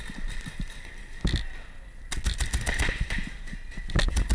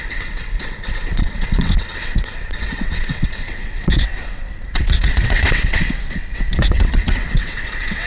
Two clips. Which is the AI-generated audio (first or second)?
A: second